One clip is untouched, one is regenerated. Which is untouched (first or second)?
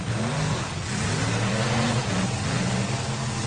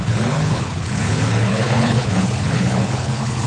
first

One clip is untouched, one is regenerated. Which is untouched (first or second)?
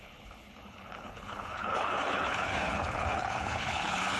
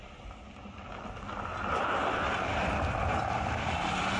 second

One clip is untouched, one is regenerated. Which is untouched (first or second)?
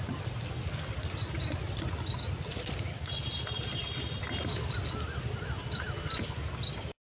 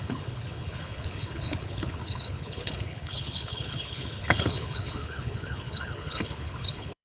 first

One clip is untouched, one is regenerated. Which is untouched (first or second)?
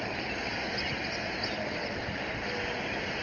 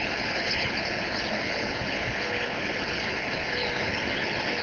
first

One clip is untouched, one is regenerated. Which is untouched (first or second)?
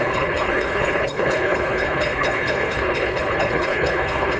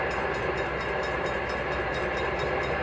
second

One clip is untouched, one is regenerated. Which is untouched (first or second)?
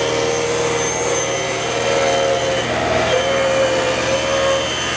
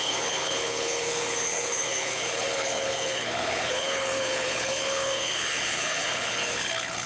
first